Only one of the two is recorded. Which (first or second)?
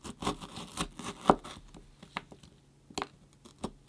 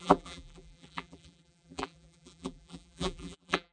first